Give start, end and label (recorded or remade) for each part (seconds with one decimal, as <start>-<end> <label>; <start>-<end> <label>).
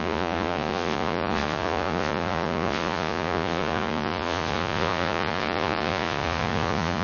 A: 0.0-7.0 remade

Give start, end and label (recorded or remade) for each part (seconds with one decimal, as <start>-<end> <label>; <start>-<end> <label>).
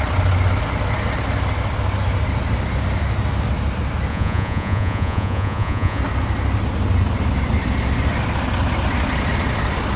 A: 0.0-4.1 recorded; 4.1-6.0 remade; 6.0-10.0 recorded